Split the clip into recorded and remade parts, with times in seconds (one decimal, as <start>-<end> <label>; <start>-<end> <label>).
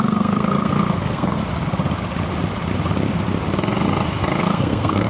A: 0.0-1.4 remade; 1.4-4.4 recorded; 4.4-5.1 remade